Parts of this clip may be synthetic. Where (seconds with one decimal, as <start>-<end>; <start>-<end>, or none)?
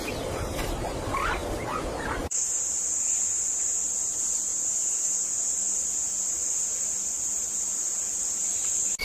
none